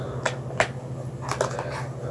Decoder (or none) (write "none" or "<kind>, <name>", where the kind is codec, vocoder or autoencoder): none